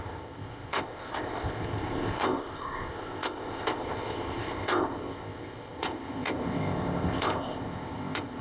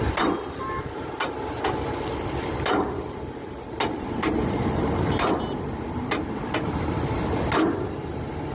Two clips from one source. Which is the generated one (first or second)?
first